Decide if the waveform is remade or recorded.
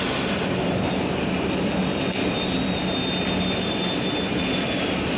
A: recorded